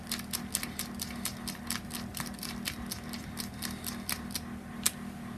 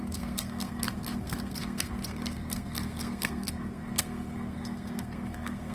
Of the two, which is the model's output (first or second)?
second